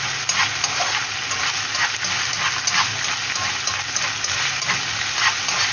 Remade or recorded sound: recorded